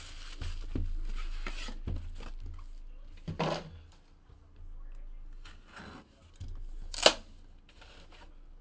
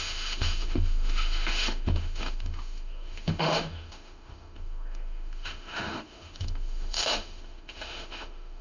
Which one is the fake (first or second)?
second